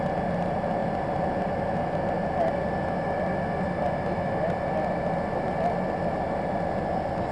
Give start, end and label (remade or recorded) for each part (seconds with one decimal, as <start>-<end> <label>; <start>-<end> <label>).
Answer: 0.0-7.3 recorded